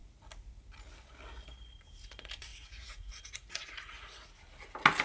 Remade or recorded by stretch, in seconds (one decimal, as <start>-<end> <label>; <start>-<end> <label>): 0.0-2.5 recorded; 2.5-4.3 remade; 4.3-5.0 recorded

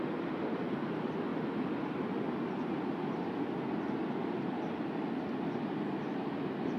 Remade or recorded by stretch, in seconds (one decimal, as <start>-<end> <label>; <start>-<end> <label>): 0.0-6.8 recorded